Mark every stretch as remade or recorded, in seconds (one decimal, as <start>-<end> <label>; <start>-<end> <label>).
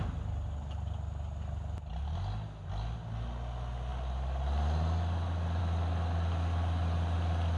0.0-7.6 recorded